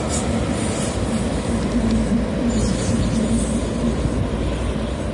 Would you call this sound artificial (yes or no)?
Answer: no